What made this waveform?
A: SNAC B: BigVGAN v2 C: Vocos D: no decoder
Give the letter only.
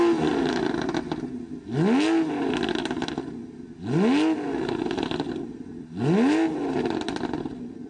D